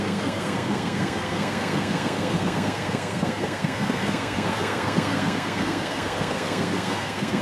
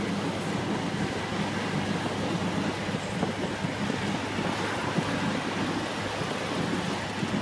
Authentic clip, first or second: second